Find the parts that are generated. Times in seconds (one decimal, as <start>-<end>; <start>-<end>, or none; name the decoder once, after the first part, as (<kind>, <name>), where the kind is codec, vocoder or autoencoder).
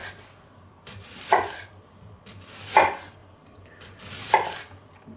none